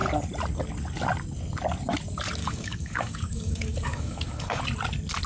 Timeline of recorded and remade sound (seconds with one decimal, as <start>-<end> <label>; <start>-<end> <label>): 0.0-2.4 recorded; 2.4-4.6 remade; 4.6-5.3 recorded